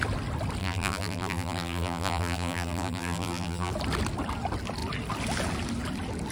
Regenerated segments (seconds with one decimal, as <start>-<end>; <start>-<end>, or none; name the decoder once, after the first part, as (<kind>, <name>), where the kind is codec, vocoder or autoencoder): 0.6-3.7 (vocoder, BigVGAN v2)